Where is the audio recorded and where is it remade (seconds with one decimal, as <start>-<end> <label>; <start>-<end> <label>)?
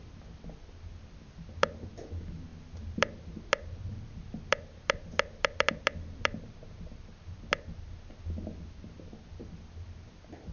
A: 0.0-10.5 recorded